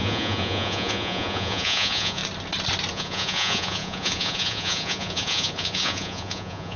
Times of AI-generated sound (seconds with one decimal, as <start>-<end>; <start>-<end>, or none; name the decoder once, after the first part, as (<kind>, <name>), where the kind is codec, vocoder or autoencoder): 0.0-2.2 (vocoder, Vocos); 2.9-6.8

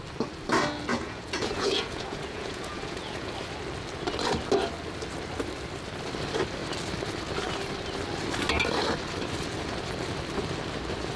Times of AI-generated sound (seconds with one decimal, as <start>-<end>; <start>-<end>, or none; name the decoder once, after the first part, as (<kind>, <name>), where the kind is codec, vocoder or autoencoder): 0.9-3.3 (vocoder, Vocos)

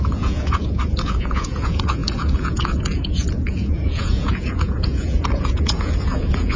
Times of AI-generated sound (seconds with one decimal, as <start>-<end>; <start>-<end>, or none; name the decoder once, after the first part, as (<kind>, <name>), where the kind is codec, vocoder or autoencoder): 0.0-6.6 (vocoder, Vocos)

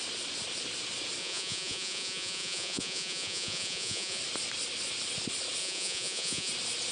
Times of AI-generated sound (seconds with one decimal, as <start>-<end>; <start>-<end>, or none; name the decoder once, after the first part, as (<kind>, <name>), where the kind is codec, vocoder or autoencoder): 1.2-4.2 (vocoder, Vocos); 5.6-6.5

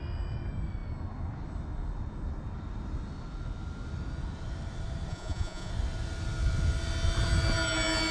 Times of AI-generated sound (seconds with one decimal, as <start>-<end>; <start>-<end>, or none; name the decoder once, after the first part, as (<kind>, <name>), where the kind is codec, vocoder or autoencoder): 5.1-5.7 (vocoder, Vocos)

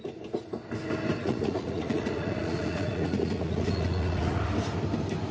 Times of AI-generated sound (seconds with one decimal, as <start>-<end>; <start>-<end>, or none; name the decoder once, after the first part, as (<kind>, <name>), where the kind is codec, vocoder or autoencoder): 1.2-4.4 (vocoder, Vocos)